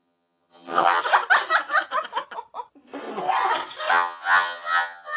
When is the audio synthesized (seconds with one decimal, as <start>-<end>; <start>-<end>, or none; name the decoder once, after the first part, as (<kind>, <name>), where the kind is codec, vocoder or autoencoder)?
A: 0.0-1.0 (vocoder, HiFi-GAN); 3.9-5.2